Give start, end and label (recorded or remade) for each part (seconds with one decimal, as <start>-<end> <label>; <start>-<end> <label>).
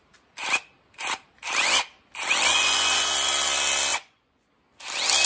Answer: 0.0-2.5 recorded; 2.5-3.1 remade; 3.1-3.9 recorded; 3.9-4.5 remade; 4.5-5.3 recorded